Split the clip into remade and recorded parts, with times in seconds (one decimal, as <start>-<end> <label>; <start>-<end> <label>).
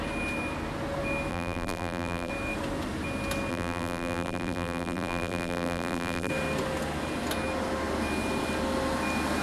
0.0-1.3 recorded; 1.3-2.3 remade; 2.3-3.5 recorded; 3.5-6.3 remade; 6.3-9.4 recorded